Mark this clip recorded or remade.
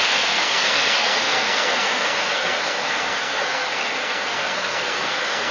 remade